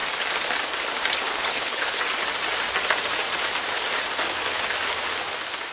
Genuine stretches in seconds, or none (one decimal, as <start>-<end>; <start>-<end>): 0.0-1.3; 2.0-5.7

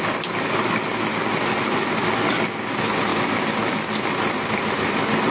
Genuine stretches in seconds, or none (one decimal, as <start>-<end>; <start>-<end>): 0.0-5.3

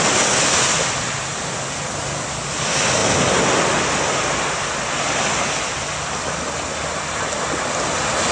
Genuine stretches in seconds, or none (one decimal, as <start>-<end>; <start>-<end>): 0.0-8.3

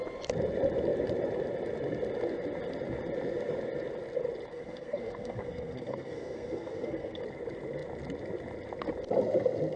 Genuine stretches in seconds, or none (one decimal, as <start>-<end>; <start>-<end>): 0.0-4.5; 7.2-9.8

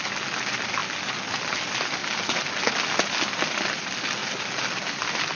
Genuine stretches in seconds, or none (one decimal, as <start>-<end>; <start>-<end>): 0.0-5.3

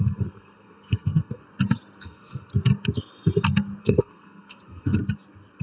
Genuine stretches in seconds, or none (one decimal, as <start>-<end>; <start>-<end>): 1.4-2.0; 2.5-3.8; 5.0-5.6

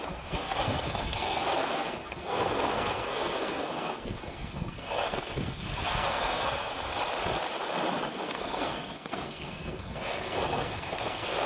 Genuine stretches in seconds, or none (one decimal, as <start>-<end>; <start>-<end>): 6.7-8.1

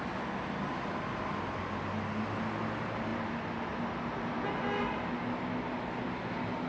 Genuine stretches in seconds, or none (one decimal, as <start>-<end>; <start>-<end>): 0.0-6.7